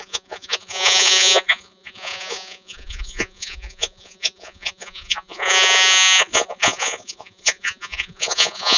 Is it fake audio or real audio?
fake